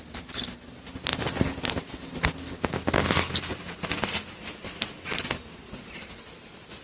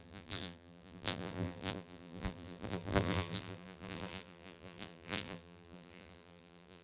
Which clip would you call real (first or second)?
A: first